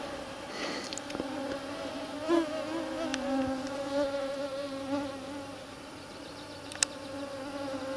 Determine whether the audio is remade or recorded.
recorded